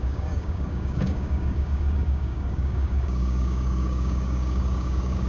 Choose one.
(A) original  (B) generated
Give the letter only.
B